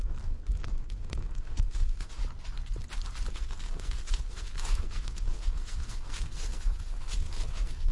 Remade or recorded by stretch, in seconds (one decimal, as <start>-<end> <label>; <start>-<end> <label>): 0.0-2.2 remade; 2.2-3.3 recorded; 3.3-7.9 remade